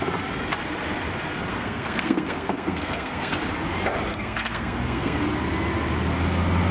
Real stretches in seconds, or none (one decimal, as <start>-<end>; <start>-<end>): 0.0-1.5; 3.3-4.1; 5.2-6.7